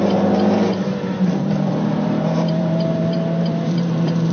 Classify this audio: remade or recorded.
remade